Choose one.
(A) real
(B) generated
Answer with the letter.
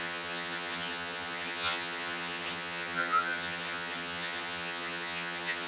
B